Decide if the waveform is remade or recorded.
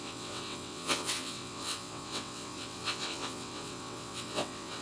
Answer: remade